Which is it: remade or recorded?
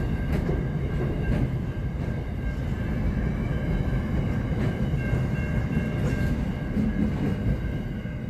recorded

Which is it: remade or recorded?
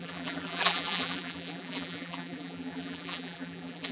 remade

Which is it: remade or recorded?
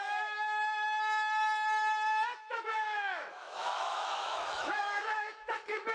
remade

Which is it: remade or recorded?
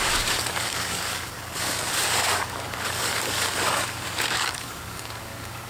remade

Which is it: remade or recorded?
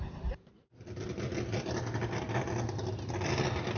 recorded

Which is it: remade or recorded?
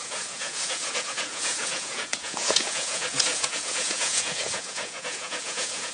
remade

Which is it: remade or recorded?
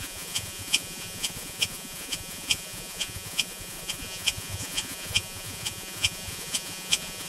remade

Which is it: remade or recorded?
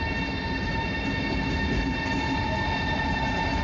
recorded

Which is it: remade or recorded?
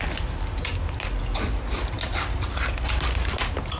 recorded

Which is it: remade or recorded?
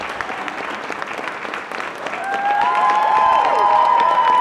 recorded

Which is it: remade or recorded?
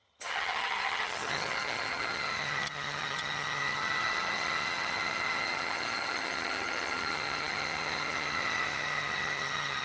remade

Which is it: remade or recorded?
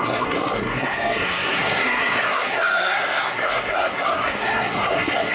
remade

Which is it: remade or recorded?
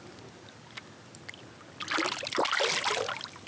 recorded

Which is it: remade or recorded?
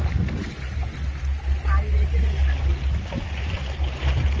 recorded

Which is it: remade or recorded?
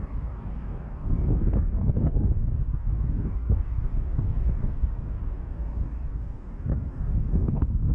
remade